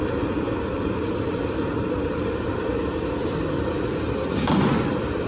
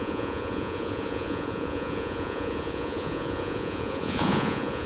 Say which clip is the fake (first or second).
second